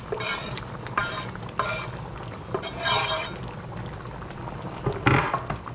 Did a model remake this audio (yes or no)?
no